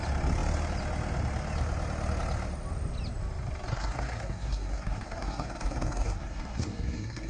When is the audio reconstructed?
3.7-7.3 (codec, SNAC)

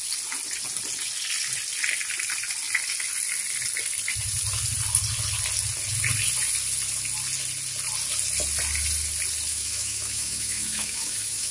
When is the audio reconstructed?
9.5-11.5 (autoencoder, DAC-VAE)

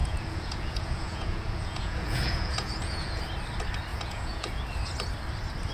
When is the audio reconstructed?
0.0-3.2 (vocoder, Vocos); 3.9-4.6

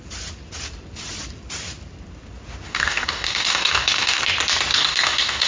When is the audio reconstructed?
2.7-4.2 (codec, DAC); 4.7-5.5